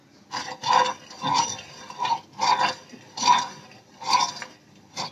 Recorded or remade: recorded